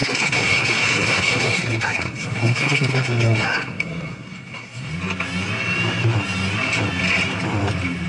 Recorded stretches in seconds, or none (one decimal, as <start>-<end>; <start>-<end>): 4.9-8.1